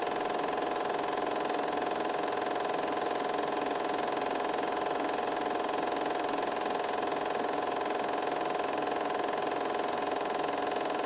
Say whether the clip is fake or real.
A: real